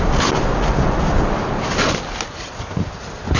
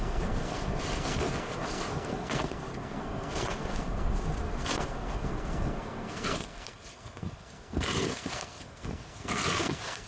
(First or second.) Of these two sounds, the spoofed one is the second